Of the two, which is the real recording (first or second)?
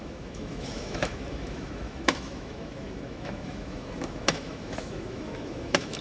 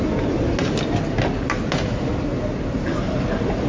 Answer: second